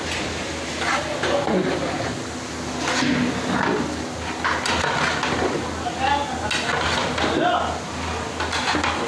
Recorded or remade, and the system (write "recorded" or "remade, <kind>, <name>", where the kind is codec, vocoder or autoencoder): recorded